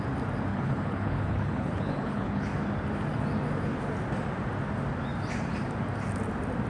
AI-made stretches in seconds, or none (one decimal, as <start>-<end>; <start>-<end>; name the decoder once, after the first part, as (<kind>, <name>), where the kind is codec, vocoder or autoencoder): 0.5-2.5 (codec, HILCodec)